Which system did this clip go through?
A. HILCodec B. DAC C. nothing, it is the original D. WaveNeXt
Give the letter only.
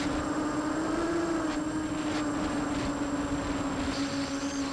C